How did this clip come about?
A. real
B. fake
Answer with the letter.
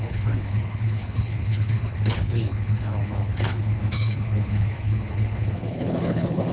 B